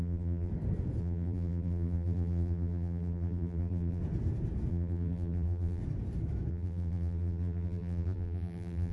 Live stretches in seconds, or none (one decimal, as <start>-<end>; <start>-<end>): 0.5-1.0; 4.0-4.7; 5.8-6.5